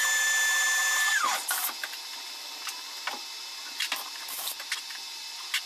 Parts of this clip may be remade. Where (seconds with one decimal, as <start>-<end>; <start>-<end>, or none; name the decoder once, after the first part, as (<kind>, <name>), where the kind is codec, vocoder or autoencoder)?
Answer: 0.0-1.3 (vocoder, BigVGAN v2); 3.6-5.7